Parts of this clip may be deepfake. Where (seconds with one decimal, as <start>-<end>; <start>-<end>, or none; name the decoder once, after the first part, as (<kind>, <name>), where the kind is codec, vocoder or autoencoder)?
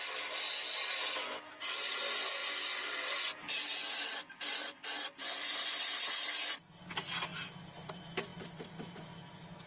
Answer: none